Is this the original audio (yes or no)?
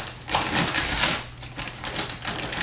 yes